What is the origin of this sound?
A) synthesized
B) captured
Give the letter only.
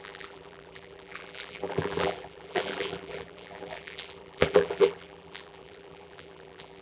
A